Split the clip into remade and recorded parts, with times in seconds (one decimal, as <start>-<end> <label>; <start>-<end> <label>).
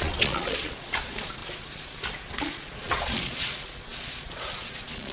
0.0-1.4 remade; 1.4-2.3 recorded; 2.3-5.1 remade